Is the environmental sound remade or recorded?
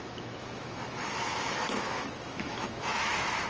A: remade